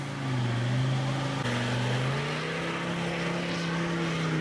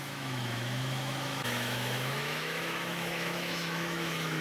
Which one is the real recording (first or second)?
first